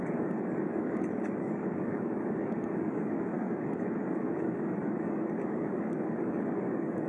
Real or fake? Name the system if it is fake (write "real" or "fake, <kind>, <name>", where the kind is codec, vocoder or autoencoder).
fake, codec, DAC